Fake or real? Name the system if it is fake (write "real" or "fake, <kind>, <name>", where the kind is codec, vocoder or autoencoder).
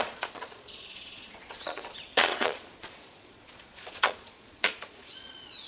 fake, vocoder, Vocos